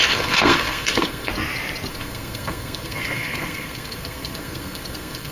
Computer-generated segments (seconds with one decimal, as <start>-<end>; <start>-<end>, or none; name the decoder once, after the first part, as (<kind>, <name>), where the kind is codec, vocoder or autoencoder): 0.0-1.3 (codec, SNAC); 1.9-5.3